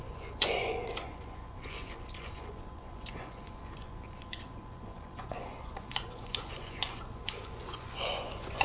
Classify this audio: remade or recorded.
remade